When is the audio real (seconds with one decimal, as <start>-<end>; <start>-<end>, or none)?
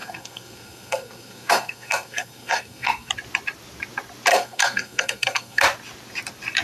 3.1-4.3; 5.6-6.6